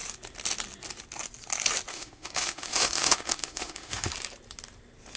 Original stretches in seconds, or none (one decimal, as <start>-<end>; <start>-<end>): 0.0-1.9; 4.1-5.2